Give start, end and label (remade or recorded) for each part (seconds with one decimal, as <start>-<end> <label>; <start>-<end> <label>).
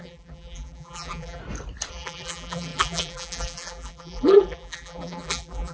0.0-1.4 remade; 1.4-1.9 recorded; 1.9-5.7 remade